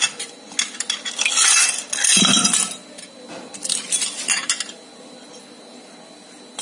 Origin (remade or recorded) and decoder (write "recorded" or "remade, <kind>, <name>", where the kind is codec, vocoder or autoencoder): recorded